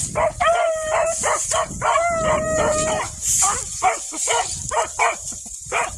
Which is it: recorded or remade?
remade